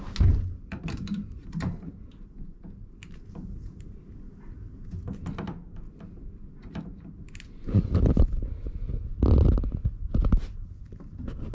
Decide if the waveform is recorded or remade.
recorded